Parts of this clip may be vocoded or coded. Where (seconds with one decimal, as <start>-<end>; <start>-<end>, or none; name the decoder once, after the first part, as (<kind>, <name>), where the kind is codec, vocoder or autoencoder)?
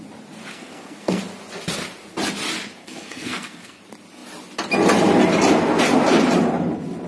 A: 0.5-1.2 (codec, SNAC); 2.8-3.8